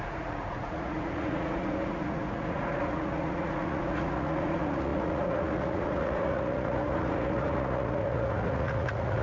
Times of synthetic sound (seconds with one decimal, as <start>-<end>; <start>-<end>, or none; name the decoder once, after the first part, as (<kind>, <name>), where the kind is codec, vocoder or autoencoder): 0.0-9.2 (vocoder, Vocos)